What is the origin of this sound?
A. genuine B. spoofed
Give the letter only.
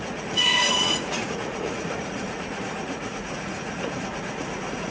B